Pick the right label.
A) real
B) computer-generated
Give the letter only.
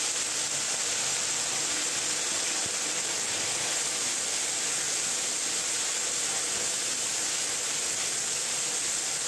A